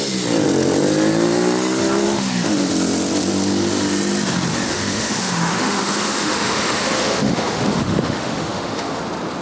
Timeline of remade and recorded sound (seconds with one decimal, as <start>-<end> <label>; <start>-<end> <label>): 0.0-1.8 recorded; 1.8-2.7 remade; 2.7-4.5 recorded; 4.5-9.0 remade; 9.0-9.4 recorded